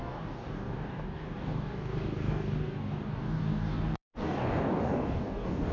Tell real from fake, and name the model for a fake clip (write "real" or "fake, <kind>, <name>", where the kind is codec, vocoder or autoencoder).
fake, codec, DAC